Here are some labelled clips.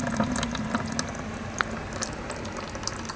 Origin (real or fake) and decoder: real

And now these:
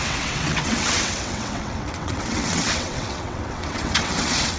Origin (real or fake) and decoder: fake, vocoder, WaveNeXt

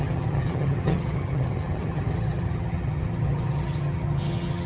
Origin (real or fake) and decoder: fake, vocoder, HiFi-GAN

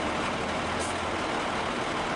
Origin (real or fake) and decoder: real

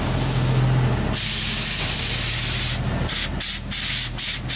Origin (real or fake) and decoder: real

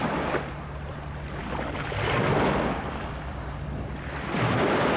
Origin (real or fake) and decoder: real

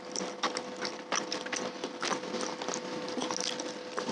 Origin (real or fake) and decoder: real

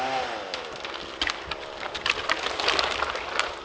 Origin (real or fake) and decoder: real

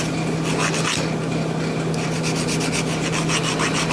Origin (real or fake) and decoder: real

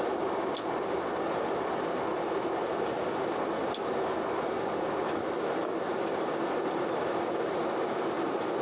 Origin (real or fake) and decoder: real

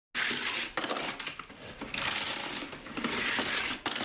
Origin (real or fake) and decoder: real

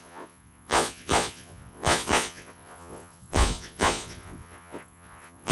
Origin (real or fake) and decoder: fake, vocoder, Vocos